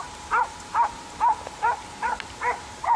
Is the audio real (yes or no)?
no